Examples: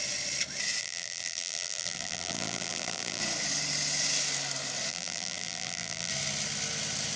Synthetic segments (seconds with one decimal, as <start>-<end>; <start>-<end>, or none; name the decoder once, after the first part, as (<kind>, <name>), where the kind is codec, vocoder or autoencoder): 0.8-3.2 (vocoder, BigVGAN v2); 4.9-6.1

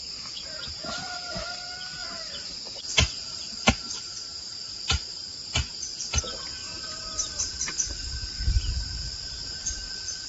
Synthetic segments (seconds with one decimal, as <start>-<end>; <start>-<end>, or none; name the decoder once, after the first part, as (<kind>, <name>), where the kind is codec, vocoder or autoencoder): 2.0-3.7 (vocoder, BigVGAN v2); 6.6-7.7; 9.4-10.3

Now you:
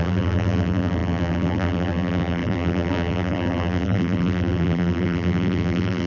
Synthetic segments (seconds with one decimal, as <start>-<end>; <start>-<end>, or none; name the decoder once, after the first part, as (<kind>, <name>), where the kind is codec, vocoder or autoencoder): 0.0-6.1 (vocoder, BigVGAN v2)

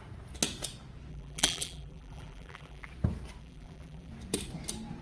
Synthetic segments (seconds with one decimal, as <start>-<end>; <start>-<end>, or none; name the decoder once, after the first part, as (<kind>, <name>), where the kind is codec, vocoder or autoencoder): 1.1-2.9 (vocoder, BigVGAN v2); 3.4-4.1